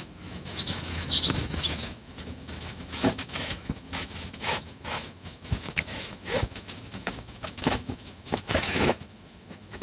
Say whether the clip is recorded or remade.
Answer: remade